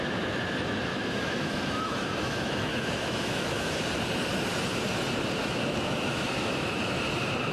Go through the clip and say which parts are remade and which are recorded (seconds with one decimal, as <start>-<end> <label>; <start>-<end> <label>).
0.0-0.9 recorded; 0.9-3.9 remade; 3.9-5.4 recorded; 5.4-6.8 remade; 6.8-7.5 recorded